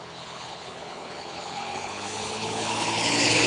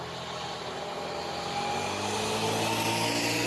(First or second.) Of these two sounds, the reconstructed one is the first